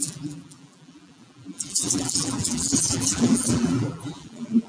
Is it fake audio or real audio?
fake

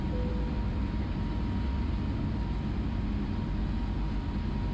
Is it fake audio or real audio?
real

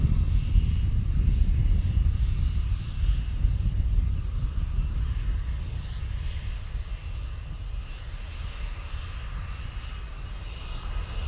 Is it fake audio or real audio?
real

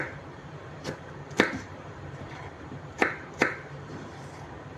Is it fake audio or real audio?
fake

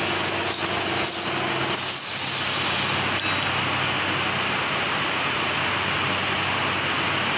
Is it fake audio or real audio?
real